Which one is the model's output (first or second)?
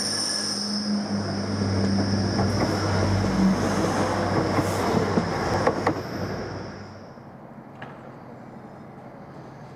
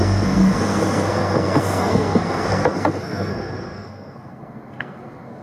second